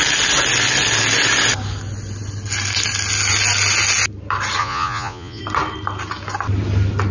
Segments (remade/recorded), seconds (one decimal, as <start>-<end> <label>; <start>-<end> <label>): 0.0-4.6 recorded; 4.6-5.4 remade; 5.4-7.1 recorded